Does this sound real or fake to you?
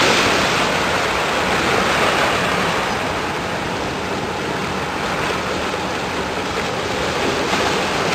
real